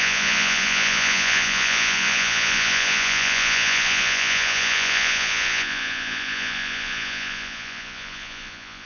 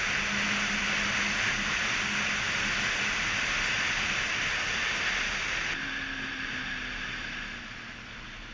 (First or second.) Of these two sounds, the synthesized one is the first